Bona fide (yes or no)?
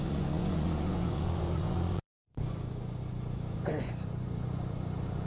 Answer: no